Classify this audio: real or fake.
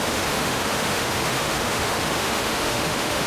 fake